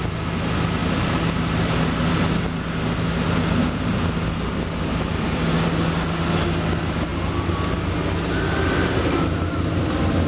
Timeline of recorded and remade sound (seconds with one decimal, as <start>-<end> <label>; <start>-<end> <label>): 0.0-10.3 recorded